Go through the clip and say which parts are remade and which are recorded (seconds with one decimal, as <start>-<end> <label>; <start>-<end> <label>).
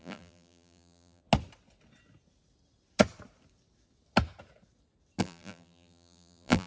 0.0-1.2 remade; 1.2-5.2 recorded; 5.2-6.7 remade